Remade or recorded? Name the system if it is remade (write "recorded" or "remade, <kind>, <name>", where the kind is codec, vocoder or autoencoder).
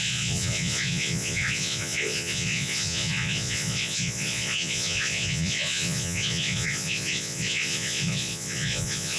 remade, vocoder, Vocos